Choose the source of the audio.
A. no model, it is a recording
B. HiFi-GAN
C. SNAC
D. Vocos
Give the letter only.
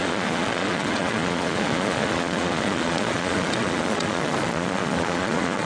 D